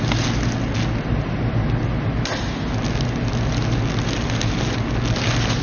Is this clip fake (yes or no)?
no